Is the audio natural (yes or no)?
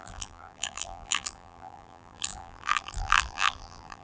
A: no